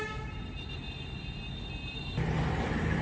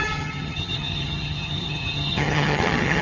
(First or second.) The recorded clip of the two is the first